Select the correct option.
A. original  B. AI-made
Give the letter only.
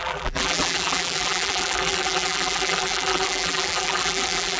B